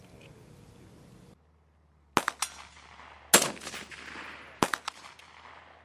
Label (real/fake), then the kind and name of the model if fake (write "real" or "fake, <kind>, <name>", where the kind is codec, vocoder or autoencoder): real